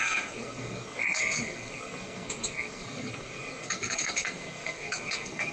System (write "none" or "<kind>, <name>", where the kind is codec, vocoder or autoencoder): codec, SNAC